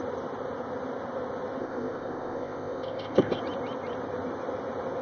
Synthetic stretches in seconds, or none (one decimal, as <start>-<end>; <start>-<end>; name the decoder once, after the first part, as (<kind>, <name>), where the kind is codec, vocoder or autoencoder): 1.6-3.4 (codec, ZipCodec)